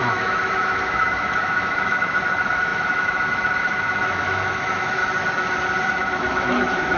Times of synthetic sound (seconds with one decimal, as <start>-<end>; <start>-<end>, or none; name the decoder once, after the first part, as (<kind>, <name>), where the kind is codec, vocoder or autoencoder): 0.0-5.0 (autoencoder, DAC-VAE); 5.9-7.0